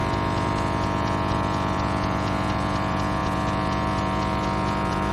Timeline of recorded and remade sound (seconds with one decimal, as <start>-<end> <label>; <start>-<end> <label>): 0.0-5.1 remade